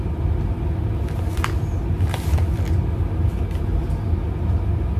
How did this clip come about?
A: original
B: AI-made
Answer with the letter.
A